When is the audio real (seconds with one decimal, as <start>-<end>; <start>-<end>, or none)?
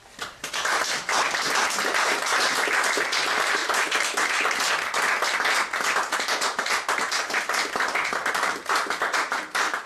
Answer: 0.8-3.0; 3.6-8.3